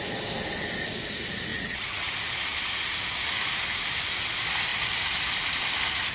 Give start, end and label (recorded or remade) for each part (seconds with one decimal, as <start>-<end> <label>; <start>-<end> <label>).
0.0-1.5 recorded; 1.5-2.1 remade; 2.1-6.1 recorded

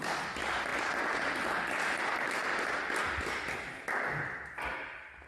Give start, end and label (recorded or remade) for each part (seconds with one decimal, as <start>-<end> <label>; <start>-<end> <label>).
0.0-2.4 recorded; 2.4-3.1 remade; 3.1-5.3 recorded

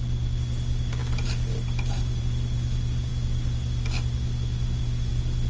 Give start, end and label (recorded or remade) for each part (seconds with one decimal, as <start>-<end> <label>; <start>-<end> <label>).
0.0-5.5 recorded